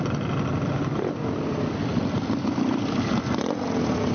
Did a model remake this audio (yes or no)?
no